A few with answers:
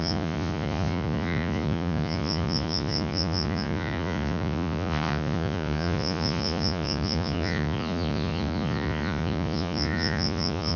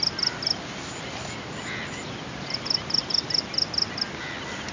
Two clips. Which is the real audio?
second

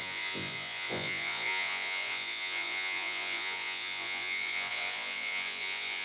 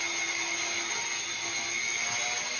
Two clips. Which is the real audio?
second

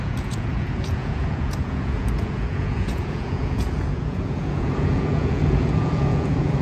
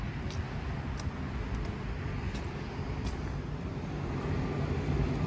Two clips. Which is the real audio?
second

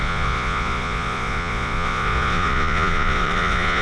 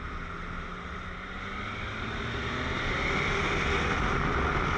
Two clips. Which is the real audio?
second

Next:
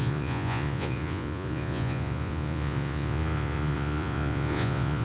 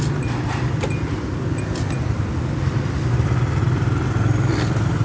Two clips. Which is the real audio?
second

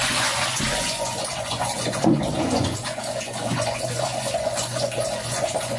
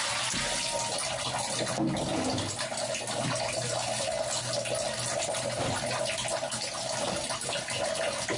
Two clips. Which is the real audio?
second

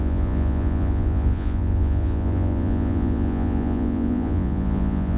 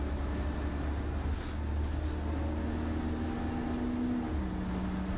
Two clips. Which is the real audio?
second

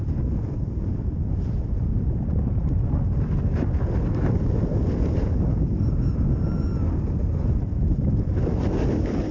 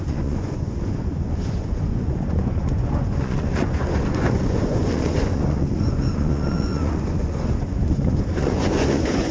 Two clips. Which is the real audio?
first